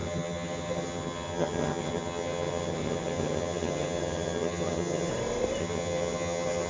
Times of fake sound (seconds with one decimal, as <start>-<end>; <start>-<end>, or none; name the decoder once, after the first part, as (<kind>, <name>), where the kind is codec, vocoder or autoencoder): 0.0-5.1 (vocoder, HiFi-GAN); 5.6-6.7